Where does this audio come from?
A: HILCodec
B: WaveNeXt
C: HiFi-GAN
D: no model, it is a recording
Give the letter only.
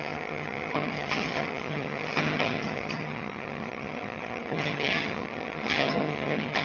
C